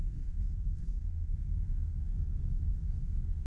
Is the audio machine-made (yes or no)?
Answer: yes